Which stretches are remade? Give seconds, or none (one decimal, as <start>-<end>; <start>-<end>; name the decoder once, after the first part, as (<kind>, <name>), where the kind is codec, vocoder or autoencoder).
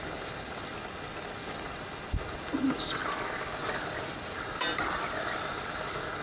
none